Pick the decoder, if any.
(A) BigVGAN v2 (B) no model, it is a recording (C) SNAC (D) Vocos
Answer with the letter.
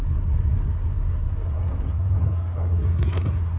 C